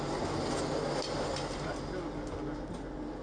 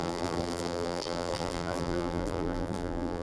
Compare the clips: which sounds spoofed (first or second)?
second